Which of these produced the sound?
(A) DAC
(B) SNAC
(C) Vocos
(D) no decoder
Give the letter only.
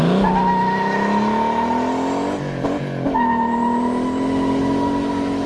D